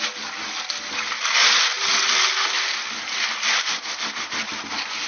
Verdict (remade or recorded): recorded